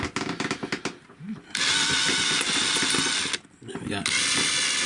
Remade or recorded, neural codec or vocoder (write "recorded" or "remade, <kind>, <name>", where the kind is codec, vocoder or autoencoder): recorded